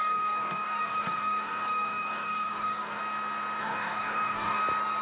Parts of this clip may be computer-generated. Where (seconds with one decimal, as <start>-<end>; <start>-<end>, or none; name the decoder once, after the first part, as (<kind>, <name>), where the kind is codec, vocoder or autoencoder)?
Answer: 0.0-3.0 (codec, DAC); 3.6-4.6